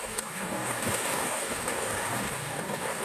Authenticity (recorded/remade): remade